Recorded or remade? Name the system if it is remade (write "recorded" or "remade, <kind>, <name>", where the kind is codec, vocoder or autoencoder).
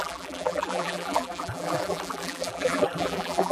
remade, vocoder, BigVGAN v2